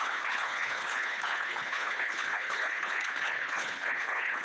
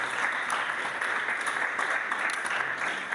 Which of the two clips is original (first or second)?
second